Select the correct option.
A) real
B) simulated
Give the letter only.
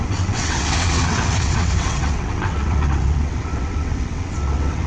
B